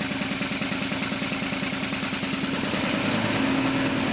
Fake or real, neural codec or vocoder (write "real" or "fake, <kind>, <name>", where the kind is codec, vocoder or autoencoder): real